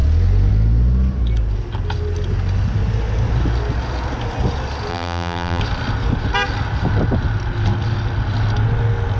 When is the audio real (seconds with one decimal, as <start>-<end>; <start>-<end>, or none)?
0.0-4.9; 5.6-9.2